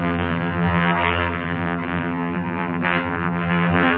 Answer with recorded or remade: remade